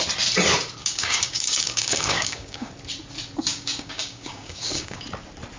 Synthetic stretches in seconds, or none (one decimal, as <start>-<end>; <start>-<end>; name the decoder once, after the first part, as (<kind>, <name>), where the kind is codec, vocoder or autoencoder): 0.8-2.7 (codec, DAC); 3.5-5.0